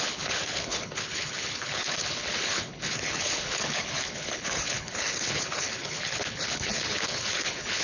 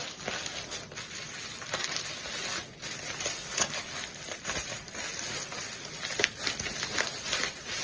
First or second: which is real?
second